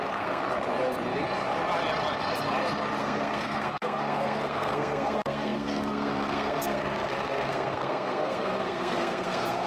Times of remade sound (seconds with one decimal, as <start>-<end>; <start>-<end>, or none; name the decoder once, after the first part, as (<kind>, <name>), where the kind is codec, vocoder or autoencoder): 0.0-0.4 (codec, SNAC); 3.0-9.7